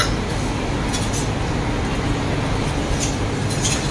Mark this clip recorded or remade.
recorded